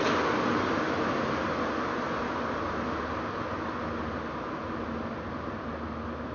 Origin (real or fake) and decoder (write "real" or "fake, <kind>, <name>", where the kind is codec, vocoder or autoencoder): real